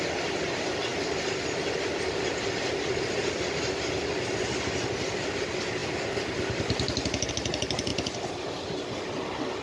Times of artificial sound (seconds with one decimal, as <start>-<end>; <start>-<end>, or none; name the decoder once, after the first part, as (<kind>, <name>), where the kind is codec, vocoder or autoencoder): none